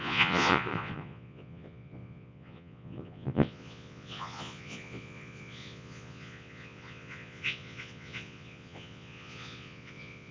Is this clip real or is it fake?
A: fake